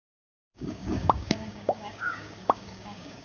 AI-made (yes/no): yes